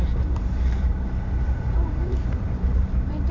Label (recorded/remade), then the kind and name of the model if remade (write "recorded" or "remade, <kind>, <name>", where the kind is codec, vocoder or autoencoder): remade, vocoder, BigVGAN v2